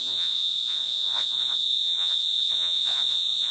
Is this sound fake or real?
fake